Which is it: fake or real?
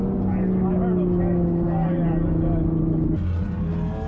real